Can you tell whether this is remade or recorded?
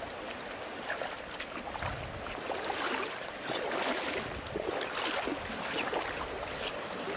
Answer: recorded